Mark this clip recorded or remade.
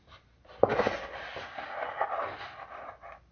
recorded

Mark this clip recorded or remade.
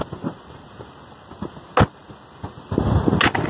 recorded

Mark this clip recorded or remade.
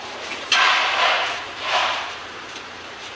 remade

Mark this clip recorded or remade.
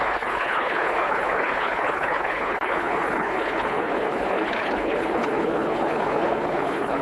remade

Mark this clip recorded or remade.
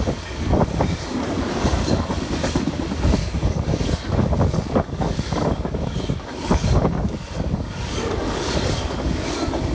remade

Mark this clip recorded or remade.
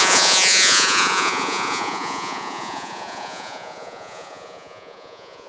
remade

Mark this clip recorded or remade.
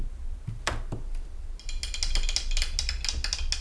recorded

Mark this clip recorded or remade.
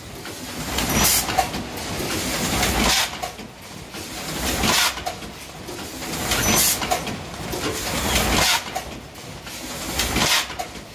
recorded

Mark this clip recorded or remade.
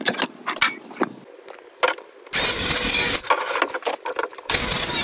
recorded